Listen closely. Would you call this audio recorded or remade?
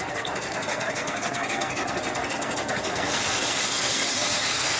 remade